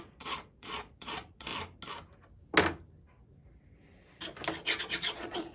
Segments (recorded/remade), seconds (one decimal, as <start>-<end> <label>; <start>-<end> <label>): 0.0-1.5 remade; 1.5-4.8 recorded; 4.8-5.5 remade